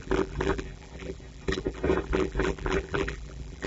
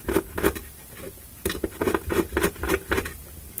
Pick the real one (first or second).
second